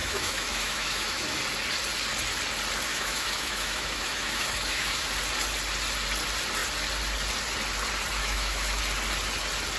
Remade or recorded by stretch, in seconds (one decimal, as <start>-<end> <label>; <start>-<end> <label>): 0.0-1.4 remade; 1.4-2.9 recorded; 2.9-5.1 remade; 5.1-8.2 recorded; 8.2-8.8 remade; 8.8-9.8 recorded